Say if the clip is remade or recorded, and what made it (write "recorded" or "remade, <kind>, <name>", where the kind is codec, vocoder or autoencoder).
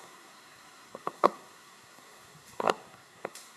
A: remade, codec, SNAC